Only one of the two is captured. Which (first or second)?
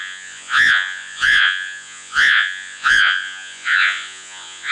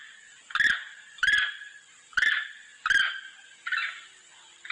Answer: second